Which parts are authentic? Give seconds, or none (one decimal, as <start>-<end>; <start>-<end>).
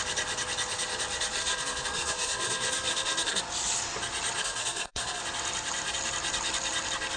0.0-1.4; 3.4-4.4; 5.2-7.2